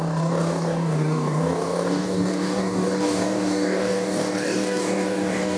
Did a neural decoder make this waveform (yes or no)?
yes